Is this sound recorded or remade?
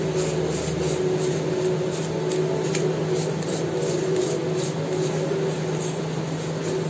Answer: recorded